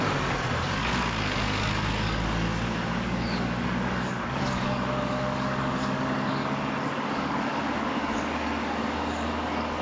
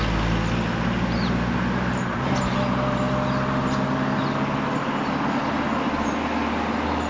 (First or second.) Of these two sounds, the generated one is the first